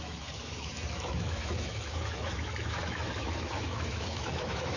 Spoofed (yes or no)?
yes